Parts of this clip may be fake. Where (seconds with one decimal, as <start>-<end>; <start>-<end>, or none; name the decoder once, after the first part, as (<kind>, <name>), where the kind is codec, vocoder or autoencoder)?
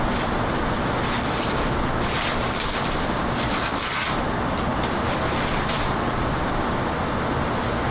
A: none